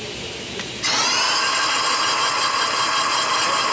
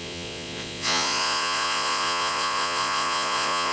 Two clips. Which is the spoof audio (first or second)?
second